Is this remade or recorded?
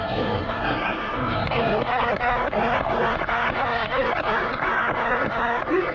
remade